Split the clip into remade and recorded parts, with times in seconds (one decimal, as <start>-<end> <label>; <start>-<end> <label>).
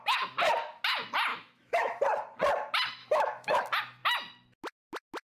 0.0-1.3 recorded; 1.3-2.0 remade; 2.0-3.0 recorded; 3.0-3.6 remade; 3.6-5.3 recorded